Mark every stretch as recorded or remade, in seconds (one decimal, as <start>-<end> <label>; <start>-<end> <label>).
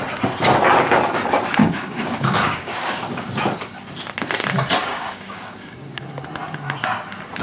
0.0-1.6 recorded; 1.6-3.3 remade; 3.3-4.8 recorded; 4.8-6.0 remade; 6.0-7.4 recorded